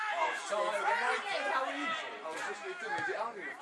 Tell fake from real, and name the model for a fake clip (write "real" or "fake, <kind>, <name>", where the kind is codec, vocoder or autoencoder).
real